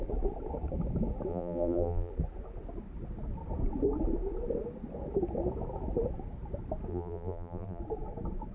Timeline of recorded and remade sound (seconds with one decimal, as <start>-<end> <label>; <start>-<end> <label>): 0.0-1.3 recorded; 1.3-2.1 remade; 2.1-6.9 recorded; 6.9-7.8 remade; 7.8-8.5 recorded